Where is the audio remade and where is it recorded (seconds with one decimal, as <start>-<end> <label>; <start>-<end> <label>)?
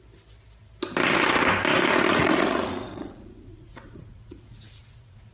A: 0.0-2.1 recorded; 2.1-5.3 remade